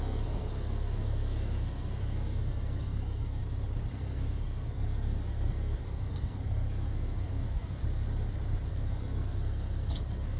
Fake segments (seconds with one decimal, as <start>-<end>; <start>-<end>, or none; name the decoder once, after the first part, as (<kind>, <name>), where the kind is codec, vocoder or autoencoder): 0.0-3.4 (codec, SNAC); 3.9-7.8; 8.7-10.4